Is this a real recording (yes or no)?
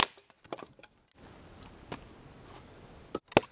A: yes